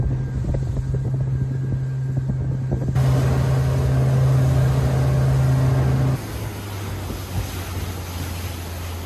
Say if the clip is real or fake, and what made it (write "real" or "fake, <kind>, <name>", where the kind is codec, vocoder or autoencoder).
real